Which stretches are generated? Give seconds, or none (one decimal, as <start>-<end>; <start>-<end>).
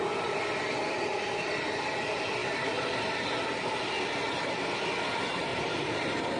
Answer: 5.5-6.4